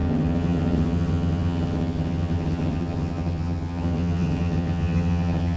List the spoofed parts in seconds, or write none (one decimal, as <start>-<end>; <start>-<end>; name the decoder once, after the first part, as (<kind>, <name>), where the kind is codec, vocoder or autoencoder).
0.0-5.6 (vocoder, HiFi-GAN)